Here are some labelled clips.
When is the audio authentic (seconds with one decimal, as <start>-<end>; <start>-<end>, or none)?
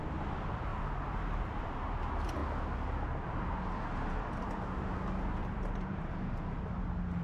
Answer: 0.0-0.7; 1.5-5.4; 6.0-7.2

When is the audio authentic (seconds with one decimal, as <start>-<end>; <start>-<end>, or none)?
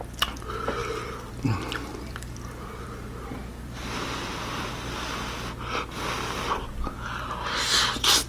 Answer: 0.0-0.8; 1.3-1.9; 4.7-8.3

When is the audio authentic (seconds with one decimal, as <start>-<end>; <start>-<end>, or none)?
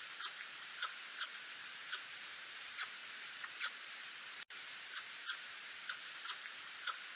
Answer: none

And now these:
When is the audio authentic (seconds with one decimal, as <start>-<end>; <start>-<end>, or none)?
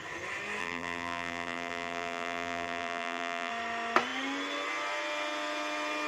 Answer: 0.0-0.6; 3.5-6.1